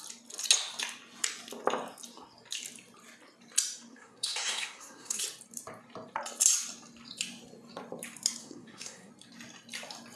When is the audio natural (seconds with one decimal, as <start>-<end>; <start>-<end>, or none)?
0.0-3.9; 5.2-8.4; 9.1-10.2